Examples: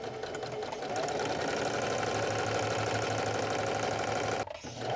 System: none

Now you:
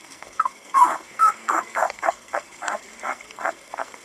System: codec, SNAC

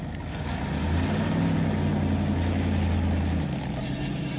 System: none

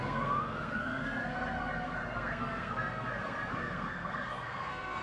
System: codec, SNAC